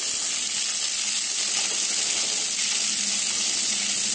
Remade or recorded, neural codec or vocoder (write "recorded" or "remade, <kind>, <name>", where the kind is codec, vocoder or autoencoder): recorded